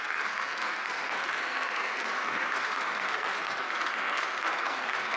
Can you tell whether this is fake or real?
fake